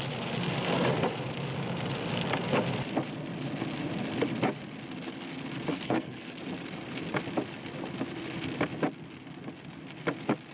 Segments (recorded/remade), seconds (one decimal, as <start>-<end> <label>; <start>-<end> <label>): 0.0-5.7 recorded; 5.7-6.4 remade; 6.4-10.5 recorded